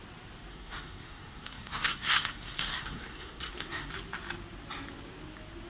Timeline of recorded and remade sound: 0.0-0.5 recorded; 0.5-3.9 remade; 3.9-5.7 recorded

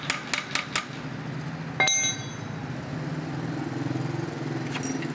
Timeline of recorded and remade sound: 0.0-5.1 recorded

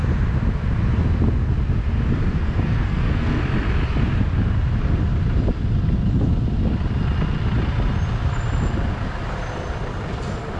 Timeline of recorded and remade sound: 0.0-2.4 recorded; 2.4-3.4 remade; 3.4-10.6 recorded

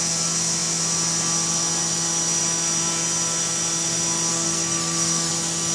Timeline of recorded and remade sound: 0.0-4.3 recorded; 4.3-5.3 remade; 5.3-5.7 recorded

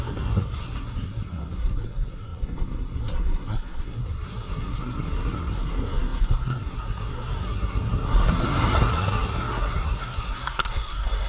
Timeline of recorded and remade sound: 0.0-11.3 remade

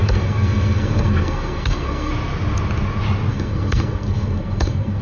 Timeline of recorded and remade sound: 0.0-2.1 remade; 2.1-3.3 recorded; 3.3-5.0 remade

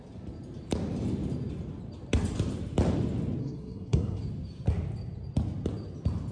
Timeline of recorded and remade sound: 0.0-3.4 recorded; 3.4-4.2 remade; 4.2-6.3 recorded